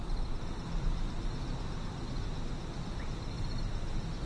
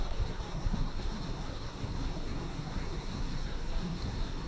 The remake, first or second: second